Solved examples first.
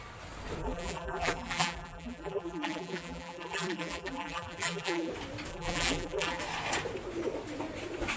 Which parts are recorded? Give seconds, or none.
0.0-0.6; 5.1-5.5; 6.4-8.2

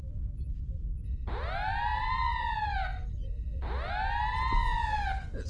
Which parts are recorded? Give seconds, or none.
0.0-5.5